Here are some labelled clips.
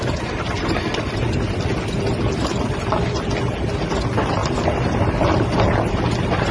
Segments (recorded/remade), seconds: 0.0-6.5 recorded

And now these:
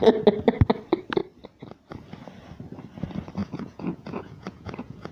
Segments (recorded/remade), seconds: 0.0-3.4 recorded; 3.4-5.1 remade

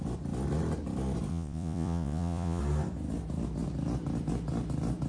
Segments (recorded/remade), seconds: 0.0-1.3 recorded; 1.3-2.6 remade; 2.6-5.1 recorded

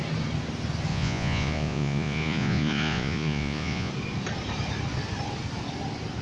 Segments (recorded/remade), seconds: 0.0-0.9 recorded; 0.9-3.9 remade; 3.9-6.2 recorded

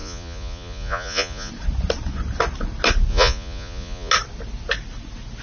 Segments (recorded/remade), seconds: 0.0-1.5 remade; 1.5-3.1 recorded; 3.1-4.1 remade; 4.1-5.4 recorded